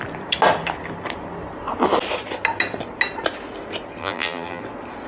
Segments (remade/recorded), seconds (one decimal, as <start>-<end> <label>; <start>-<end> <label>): 0.0-4.0 recorded; 4.0-4.6 remade; 4.6-5.1 recorded